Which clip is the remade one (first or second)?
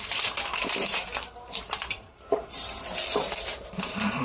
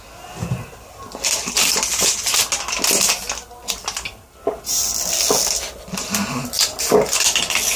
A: first